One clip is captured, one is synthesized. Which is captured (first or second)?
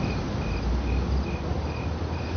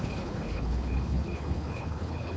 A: first